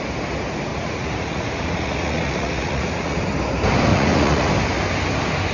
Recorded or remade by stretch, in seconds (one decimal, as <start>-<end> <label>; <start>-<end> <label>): 0.0-0.7 recorded; 0.7-3.2 remade; 3.2-3.9 recorded; 3.9-4.5 remade; 4.5-5.5 recorded